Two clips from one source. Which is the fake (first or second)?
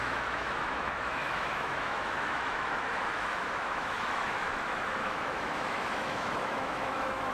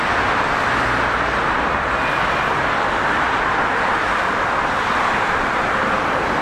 first